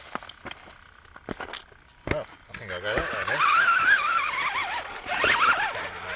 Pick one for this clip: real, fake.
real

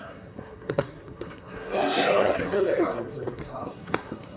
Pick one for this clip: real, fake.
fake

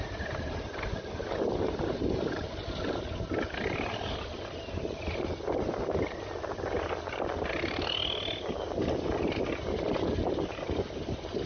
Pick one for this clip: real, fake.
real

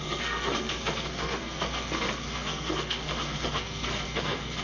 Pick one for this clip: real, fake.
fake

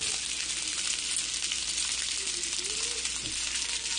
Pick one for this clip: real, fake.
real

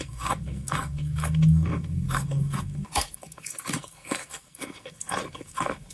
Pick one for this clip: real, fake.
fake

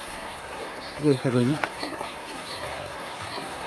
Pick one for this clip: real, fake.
fake